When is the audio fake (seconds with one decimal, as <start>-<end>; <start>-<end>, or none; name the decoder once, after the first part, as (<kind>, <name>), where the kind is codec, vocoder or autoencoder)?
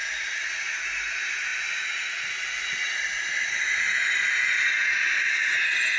none